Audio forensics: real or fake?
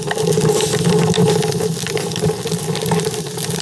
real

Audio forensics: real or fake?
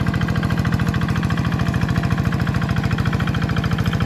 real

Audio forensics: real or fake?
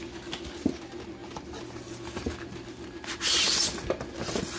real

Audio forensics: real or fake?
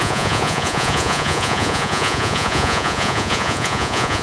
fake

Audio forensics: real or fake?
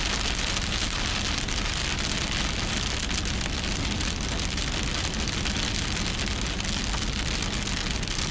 real